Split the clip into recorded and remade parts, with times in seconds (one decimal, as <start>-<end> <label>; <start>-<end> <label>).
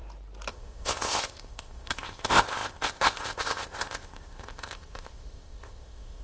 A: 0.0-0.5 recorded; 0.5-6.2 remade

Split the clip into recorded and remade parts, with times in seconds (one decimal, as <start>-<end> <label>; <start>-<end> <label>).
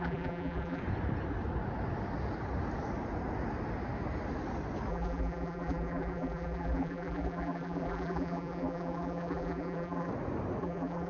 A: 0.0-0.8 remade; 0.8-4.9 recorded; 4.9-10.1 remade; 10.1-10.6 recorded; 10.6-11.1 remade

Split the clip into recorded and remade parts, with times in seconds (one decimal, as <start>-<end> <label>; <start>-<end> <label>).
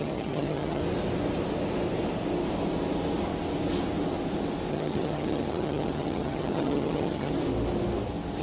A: 0.0-0.8 remade; 0.8-4.7 recorded; 4.7-7.3 remade; 7.3-8.4 recorded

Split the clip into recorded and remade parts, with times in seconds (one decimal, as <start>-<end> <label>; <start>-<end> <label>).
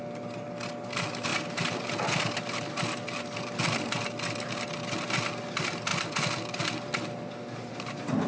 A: 0.0-8.3 recorded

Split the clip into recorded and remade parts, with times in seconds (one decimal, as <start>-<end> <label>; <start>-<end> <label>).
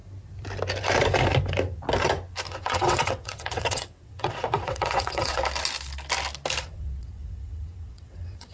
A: 0.0-2.5 recorded; 2.5-5.4 remade; 5.4-6.6 recorded; 6.6-8.5 remade